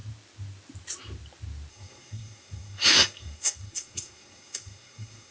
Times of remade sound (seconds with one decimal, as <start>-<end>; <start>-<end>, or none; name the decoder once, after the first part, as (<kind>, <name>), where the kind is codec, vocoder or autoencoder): 1.7-5.3 (codec, SNAC)